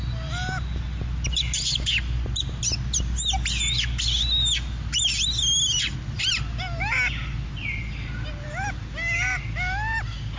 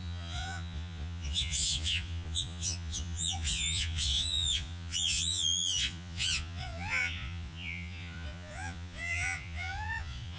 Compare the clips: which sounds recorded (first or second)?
first